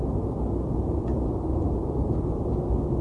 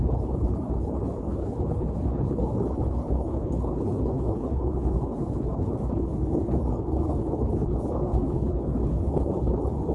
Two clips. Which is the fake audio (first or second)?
second